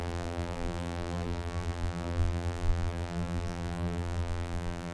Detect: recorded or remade remade